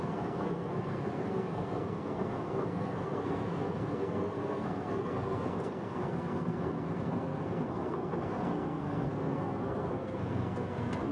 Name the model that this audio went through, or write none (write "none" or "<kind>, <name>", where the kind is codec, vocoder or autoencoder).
codec, SNAC